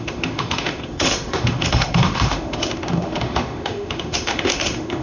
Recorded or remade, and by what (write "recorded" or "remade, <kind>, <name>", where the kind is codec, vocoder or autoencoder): remade, autoencoder, DAC-VAE